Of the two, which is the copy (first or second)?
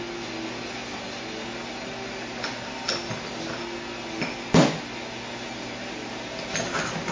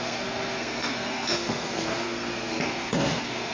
second